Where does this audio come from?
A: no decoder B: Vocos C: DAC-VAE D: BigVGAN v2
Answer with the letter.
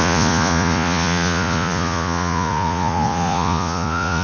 B